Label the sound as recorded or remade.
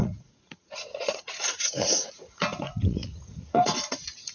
remade